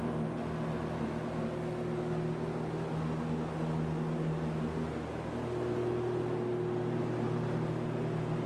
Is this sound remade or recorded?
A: recorded